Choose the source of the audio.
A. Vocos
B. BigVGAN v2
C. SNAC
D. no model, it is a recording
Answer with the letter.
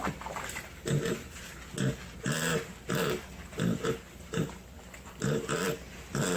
D